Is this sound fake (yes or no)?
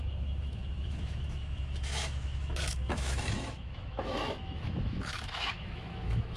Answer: yes